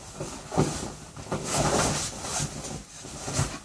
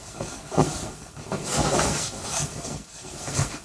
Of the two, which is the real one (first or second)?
first